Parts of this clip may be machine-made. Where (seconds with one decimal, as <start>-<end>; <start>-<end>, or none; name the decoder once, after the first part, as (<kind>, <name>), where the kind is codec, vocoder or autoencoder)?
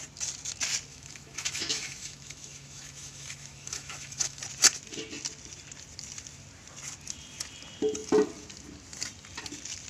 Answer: 0.9-4.4 (autoencoder, DAC-VAE)